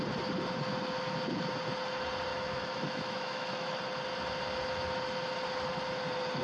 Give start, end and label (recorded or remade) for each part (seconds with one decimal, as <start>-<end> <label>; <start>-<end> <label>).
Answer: 0.0-2.3 recorded; 2.3-3.8 remade; 3.8-6.4 recorded